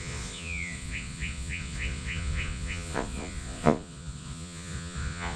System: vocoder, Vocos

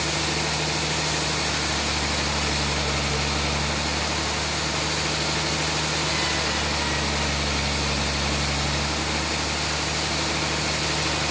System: none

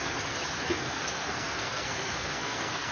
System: codec, SNAC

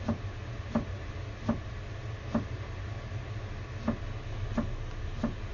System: none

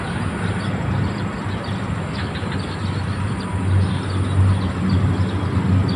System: none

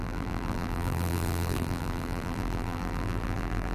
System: vocoder, BigVGAN v2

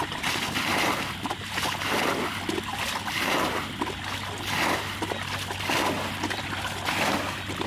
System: none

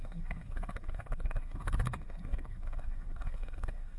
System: codec, SNAC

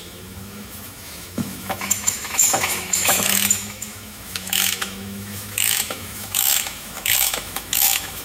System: autoencoder, DAC-VAE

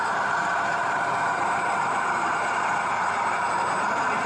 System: vocoder, BigVGAN v2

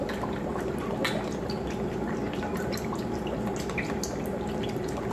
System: none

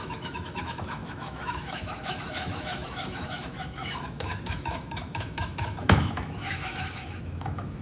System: autoencoder, DAC-VAE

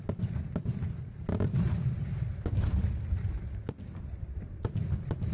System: none